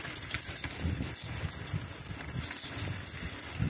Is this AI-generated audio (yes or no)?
no